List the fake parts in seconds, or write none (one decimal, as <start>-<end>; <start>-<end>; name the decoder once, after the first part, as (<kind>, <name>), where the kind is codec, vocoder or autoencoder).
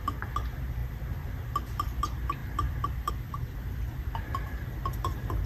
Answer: 2.4-3.1 (vocoder, BigVGAN v2)